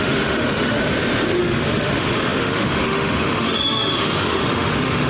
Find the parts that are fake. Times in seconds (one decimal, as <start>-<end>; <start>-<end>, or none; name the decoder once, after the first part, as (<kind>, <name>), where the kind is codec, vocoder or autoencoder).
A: 0.0-0.8 (autoencoder, DAC-VAE); 1.4-5.1